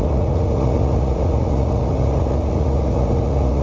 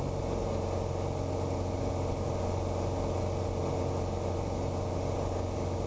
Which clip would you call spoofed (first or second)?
first